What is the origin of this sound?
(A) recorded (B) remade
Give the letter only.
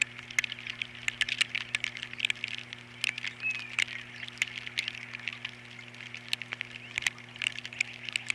A